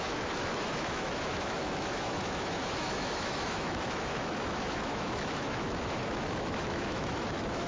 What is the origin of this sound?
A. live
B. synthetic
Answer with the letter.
B